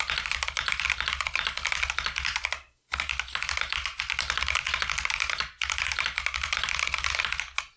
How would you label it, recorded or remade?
recorded